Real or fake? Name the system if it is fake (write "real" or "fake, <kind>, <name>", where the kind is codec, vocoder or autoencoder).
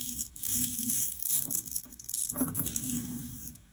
fake, codec, DAC